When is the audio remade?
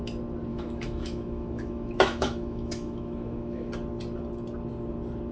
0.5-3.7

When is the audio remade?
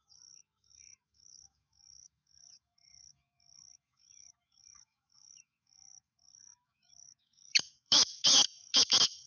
0.0-9.3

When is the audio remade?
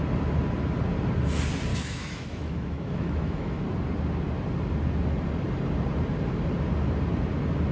1.7-3.6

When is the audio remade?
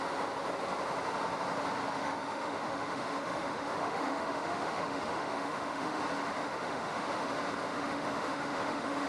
2.0-6.0; 6.4-7.3; 7.7-9.1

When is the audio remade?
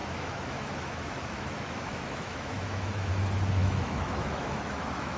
0.0-3.1; 3.6-5.2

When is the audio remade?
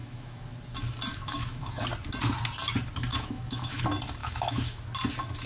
0.0-0.5; 1.1-1.8; 3.1-3.8; 4.2-4.8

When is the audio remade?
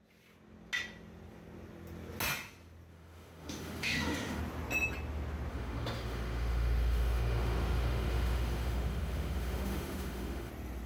2.9-4.4; 5.5-10.5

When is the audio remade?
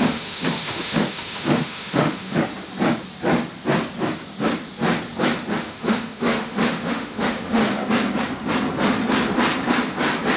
0.0-2.4; 5.5-7.6